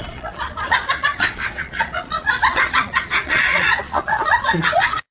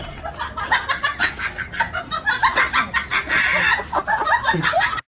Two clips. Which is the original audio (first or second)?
second